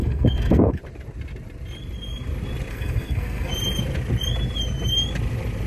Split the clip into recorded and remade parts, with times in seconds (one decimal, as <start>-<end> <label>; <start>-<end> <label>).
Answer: 0.0-0.8 remade; 0.8-2.7 recorded; 2.7-3.5 remade; 3.5-5.7 recorded